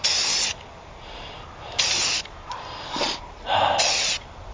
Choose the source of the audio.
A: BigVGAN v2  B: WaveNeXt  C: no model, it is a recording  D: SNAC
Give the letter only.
C